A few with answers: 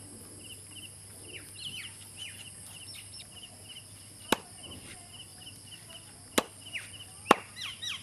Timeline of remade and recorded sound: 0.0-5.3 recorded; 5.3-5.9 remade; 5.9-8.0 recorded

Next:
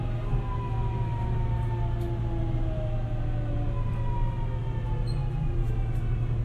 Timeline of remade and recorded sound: 0.0-5.2 recorded; 5.2-5.7 remade; 5.7-6.4 recorded

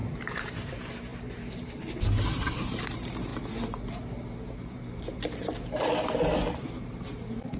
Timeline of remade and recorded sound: 0.0-3.3 remade; 3.3-4.1 recorded; 4.1-7.6 remade

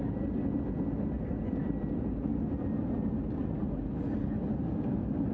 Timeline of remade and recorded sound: 0.0-5.3 recorded

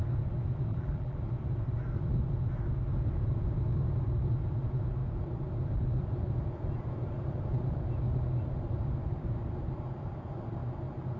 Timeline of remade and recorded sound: 0.0-0.7 recorded; 0.7-1.2 remade; 1.2-11.2 recorded

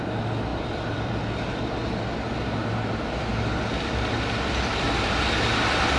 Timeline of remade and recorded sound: 0.0-0.5 recorded; 0.5-1.2 remade; 1.2-6.0 recorded

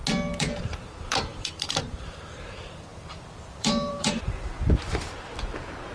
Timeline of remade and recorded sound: 0.0-0.6 recorded; 0.6-4.6 remade; 4.6-5.9 recorded

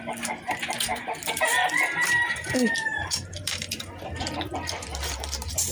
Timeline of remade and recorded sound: 0.0-0.9 recorded; 0.9-4.3 remade; 4.3-4.9 recorded; 4.9-5.7 remade